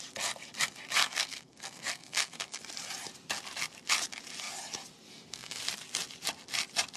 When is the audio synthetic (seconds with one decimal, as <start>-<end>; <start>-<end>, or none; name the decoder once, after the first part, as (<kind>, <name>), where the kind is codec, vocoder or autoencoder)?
1.0-2.6 (codec, SNAC); 5.1-5.6